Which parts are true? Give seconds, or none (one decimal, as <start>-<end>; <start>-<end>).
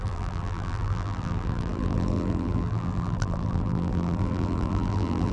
none